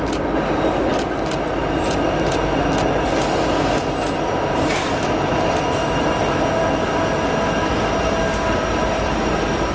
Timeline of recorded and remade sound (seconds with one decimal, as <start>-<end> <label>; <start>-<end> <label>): 0.0-9.7 recorded